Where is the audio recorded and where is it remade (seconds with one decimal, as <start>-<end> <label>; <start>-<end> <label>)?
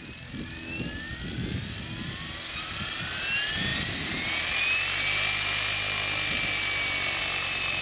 0.0-7.8 recorded